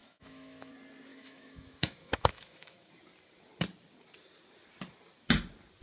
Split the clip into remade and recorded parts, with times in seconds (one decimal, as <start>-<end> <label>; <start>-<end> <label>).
0.0-0.7 remade; 0.7-1.1 recorded; 1.1-2.9 remade; 2.9-5.8 recorded